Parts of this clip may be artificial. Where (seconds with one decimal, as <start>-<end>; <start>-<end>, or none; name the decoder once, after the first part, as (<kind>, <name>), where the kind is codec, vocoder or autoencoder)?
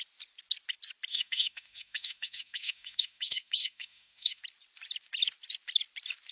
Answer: 1.1-4.4 (autoencoder, DAC-VAE)